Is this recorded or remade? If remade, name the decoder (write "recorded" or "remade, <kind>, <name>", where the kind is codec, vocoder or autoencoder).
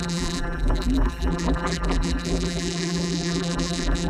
remade, vocoder, BigVGAN v2